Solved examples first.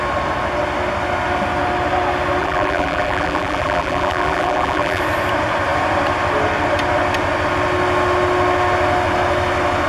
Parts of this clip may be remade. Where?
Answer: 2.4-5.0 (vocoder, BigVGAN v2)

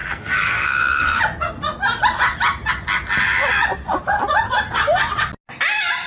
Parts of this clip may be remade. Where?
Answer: 0.0-1.2 (codec, SNAC)

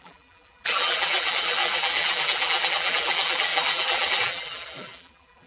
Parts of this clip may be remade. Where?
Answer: 0.0-5.5 (vocoder, BigVGAN v2)

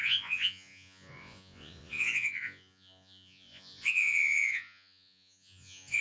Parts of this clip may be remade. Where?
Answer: 0.0-6.0 (vocoder, Vocos)

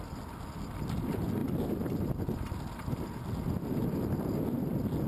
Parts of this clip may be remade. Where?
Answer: none

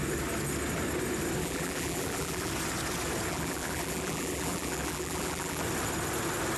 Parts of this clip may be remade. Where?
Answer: 1.4-2.5 (vocoder, BigVGAN v2); 3.3-5.6

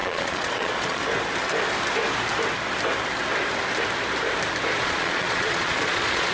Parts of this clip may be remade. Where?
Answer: 0.0-1.0 (vocoder, Vocos); 4.8-6.3

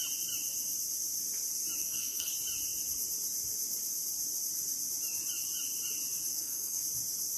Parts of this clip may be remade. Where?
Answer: 1.8-2.3 (codec, SNAC); 6.3-6.8